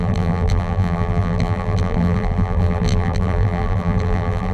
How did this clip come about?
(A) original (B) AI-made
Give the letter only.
B